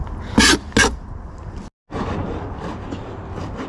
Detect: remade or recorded recorded